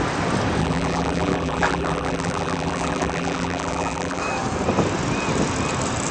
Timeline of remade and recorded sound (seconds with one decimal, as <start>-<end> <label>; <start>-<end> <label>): 0.0-0.6 recorded; 0.6-4.2 remade; 4.2-6.1 recorded